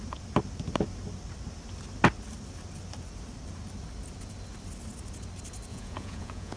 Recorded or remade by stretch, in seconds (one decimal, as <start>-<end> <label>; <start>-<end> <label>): 0.0-5.7 recorded; 5.7-6.6 remade